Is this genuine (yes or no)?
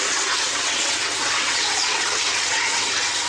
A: no